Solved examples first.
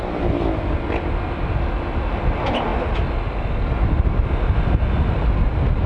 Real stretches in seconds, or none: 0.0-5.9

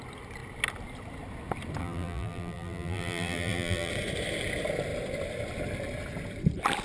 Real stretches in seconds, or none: 0.0-1.8; 3.9-6.8

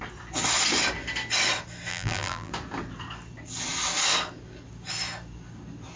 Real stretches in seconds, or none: 0.0-1.9; 2.5-6.0